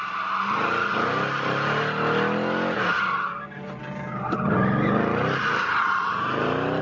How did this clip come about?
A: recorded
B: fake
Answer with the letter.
A